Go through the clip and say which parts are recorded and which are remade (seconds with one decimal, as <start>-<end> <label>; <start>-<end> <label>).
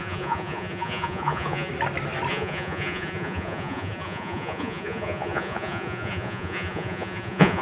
0.0-1.7 remade; 1.7-2.3 recorded; 2.3-7.6 remade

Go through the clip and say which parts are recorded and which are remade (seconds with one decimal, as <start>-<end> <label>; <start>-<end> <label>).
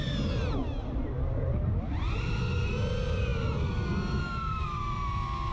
0.0-5.5 recorded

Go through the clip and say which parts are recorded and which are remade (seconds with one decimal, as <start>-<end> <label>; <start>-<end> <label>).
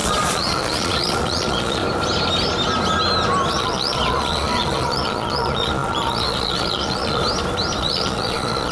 0.0-1.8 remade; 1.8-3.5 recorded; 3.5-7.2 remade; 7.2-7.8 recorded; 7.8-8.7 remade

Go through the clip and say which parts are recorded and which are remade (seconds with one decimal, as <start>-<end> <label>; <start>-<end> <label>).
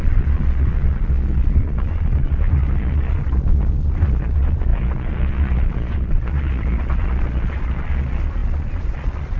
0.0-9.4 remade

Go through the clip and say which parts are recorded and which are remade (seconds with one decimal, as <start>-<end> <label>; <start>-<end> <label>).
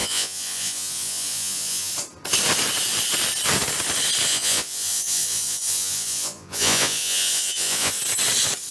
0.0-1.9 remade; 1.9-4.3 recorded; 4.3-8.0 remade; 8.0-8.7 recorded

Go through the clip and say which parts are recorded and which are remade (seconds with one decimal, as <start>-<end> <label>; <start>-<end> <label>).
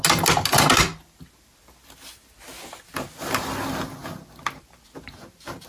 0.0-5.7 recorded